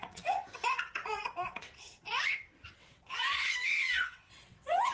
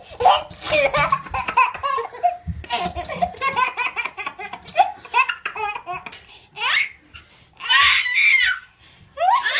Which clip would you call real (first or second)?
second